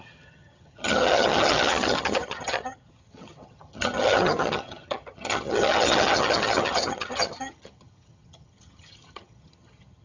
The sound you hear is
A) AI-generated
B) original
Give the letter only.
A